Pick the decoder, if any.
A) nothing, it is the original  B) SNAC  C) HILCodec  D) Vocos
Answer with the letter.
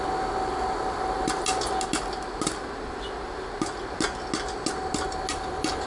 A